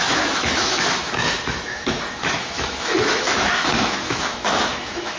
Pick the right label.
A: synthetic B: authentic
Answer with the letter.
A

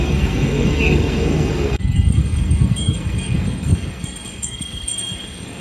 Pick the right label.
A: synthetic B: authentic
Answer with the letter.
A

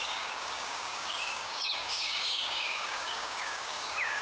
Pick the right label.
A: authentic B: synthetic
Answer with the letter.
B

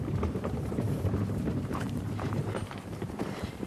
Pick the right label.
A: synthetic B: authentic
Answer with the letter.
A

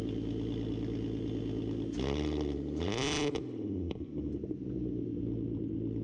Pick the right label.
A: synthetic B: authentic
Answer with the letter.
B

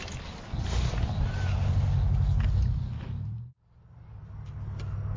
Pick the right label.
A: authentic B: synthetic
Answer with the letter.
A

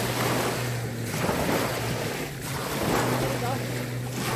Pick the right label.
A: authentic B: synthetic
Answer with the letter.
A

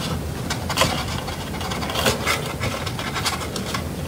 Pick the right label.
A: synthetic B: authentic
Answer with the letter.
B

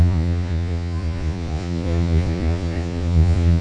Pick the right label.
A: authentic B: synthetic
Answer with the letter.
B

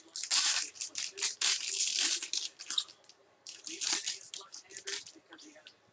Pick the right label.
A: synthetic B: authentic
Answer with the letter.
B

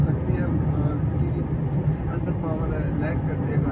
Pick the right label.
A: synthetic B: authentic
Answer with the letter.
B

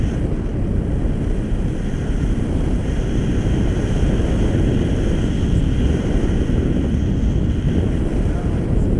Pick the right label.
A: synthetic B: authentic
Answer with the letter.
B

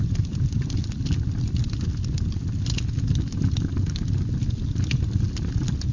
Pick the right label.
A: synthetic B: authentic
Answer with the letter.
B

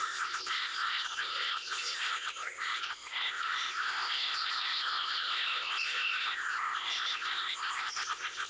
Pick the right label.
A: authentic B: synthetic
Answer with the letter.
B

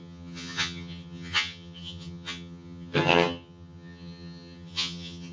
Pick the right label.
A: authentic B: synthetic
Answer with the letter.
B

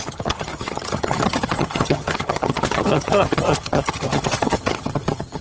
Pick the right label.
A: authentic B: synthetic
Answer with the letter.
B